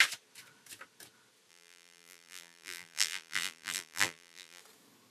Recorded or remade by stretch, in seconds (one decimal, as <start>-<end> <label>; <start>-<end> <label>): 0.0-1.5 recorded; 1.5-4.6 remade; 4.6-5.1 recorded